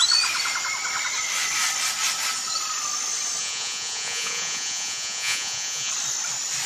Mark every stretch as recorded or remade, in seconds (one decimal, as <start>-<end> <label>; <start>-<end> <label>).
0.0-3.4 recorded; 3.4-5.9 remade; 5.9-6.7 recorded